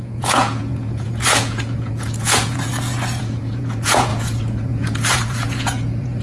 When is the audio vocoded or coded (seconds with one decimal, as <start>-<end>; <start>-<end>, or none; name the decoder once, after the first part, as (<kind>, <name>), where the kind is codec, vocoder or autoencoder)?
0.0-2.7 (vocoder, Vocos); 3.2-6.2

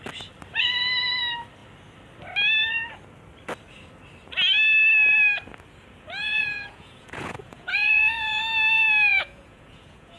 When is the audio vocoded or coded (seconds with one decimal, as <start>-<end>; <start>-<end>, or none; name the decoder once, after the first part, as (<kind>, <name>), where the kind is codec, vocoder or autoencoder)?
6.2-8.4 (vocoder, Vocos); 9.1-10.2

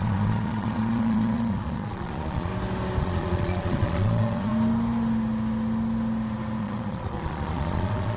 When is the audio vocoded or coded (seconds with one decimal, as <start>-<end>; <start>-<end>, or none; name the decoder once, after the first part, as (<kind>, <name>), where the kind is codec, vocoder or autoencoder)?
0.0-2.5 (vocoder, Vocos); 3.0-4.5; 6.6-8.2

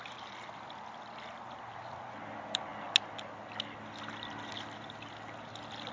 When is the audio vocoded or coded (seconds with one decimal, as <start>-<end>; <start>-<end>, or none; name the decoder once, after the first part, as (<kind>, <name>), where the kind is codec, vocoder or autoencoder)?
none

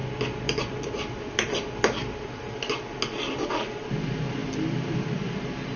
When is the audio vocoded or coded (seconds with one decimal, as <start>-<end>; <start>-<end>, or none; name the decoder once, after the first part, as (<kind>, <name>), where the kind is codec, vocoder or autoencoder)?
none

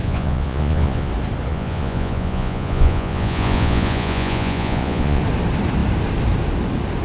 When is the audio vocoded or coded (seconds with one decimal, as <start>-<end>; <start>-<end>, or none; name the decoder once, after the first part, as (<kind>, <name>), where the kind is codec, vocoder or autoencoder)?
0.0-1.1 (vocoder, Vocos); 1.5-5.2